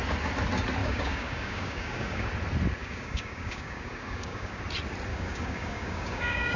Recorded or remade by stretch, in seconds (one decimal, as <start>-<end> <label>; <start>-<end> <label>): 0.0-0.8 recorded; 0.8-2.3 remade; 2.3-2.8 recorded; 2.8-4.6 remade; 4.6-5.1 recorded; 5.1-6.6 remade